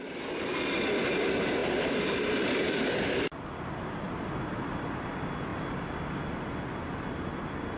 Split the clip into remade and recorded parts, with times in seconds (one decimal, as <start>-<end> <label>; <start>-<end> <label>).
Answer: 0.0-1.6 recorded; 1.6-2.8 remade; 2.8-7.8 recorded